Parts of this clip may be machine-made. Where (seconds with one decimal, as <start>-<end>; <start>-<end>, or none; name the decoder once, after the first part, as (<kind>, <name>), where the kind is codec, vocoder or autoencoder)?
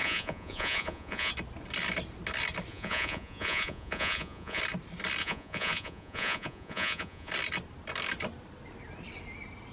0.0-1.3 (vocoder, Vocos); 2.7-4.6; 5.2-7.3